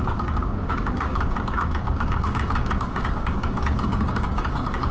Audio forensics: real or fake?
fake